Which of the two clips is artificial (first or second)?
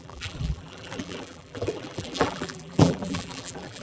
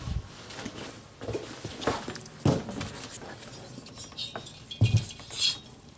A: first